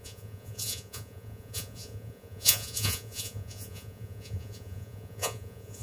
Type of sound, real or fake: fake